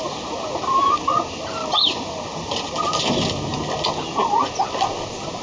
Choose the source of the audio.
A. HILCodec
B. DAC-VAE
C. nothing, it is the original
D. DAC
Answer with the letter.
C